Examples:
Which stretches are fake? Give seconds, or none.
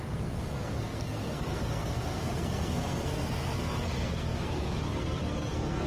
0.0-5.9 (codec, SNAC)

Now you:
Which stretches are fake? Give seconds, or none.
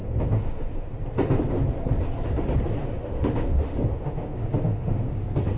0.0-0.9 (autoencoder, DAC-VAE); 2.8-5.1